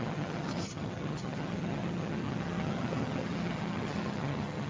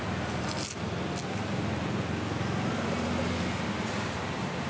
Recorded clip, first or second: second